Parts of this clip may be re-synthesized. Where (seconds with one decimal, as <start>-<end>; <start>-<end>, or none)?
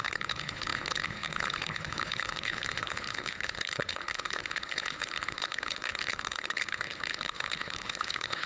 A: 0.0-8.5